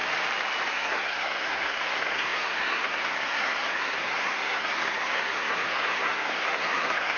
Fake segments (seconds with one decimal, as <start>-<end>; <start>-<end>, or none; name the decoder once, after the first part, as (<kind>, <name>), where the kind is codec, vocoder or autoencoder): 0.7-7.2 (codec, SNAC)